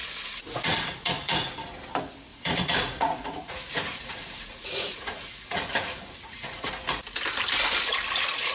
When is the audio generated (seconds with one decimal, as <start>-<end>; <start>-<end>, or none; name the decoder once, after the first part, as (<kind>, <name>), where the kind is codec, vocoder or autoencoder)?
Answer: 0.0-1.5 (vocoder, Vocos); 2.3-6.7